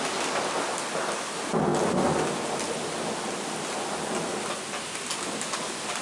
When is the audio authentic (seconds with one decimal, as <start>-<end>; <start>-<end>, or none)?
0.0-6.0